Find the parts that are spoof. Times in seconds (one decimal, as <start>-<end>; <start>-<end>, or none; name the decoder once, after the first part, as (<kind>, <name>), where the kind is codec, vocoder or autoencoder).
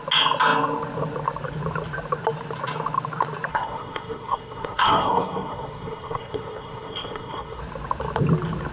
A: 3.5-7.6 (codec, SNAC)